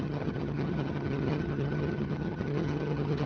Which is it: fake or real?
fake